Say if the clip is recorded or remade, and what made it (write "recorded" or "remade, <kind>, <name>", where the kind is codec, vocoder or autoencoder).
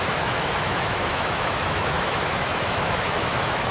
remade, autoencoder, DAC-VAE